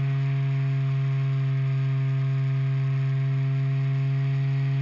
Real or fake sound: real